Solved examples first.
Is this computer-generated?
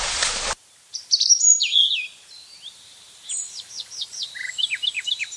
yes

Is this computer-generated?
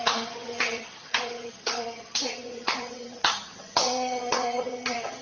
yes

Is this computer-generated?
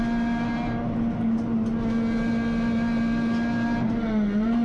no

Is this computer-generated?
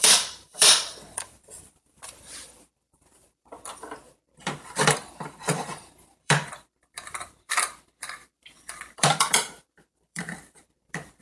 yes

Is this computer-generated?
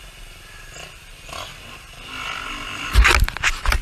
no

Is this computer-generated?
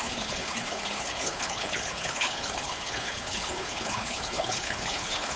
yes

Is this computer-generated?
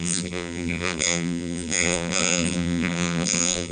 yes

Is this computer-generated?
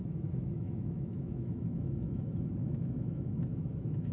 yes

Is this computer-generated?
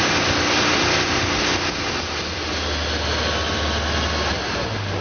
no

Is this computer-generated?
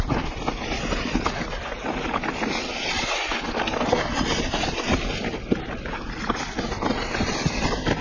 no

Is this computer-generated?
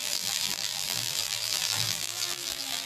yes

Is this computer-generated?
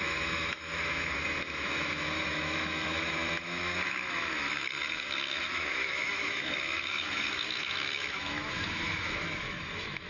yes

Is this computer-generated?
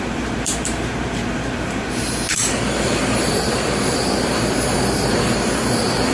yes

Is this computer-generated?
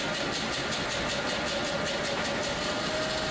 no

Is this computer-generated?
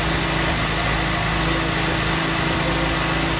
no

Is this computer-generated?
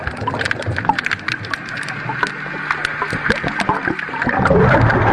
no